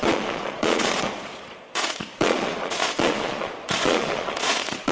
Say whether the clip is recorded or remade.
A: remade